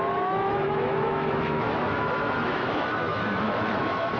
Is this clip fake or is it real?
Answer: fake